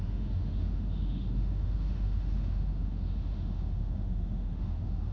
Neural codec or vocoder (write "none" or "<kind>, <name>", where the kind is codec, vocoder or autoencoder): autoencoder, DAC-VAE